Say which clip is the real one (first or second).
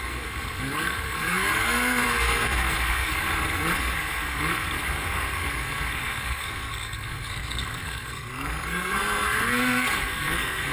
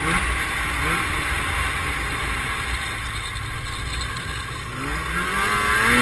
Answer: second